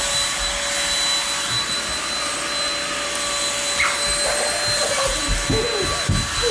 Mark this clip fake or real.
real